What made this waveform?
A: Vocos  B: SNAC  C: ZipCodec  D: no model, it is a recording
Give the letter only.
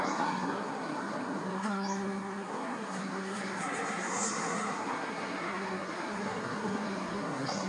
B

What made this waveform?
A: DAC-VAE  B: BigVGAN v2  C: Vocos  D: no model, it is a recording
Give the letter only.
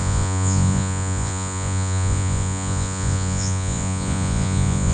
C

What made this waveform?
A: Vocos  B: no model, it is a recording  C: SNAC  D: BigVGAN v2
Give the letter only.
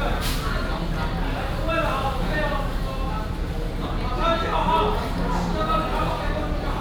B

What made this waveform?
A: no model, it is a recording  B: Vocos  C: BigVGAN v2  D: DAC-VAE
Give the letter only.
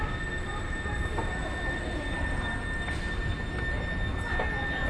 A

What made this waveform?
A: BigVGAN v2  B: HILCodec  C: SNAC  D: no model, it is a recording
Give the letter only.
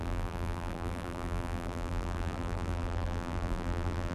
A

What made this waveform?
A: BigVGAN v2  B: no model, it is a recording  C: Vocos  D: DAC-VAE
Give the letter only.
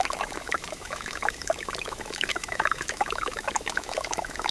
D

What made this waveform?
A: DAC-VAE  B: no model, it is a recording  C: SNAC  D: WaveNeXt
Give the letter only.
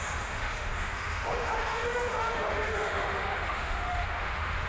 A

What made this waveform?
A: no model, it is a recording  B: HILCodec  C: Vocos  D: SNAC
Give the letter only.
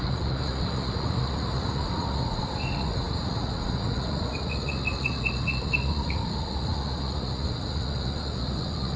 C